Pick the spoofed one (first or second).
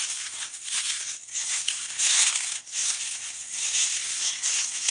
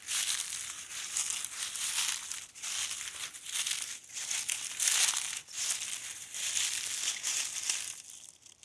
first